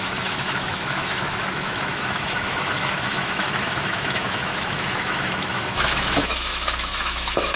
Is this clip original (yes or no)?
no